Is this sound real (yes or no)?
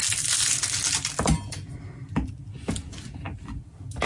yes